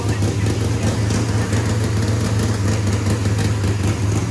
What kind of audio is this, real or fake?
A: real